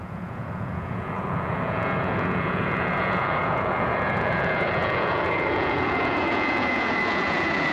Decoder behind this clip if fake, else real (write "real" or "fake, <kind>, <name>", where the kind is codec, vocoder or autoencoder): fake, vocoder, Vocos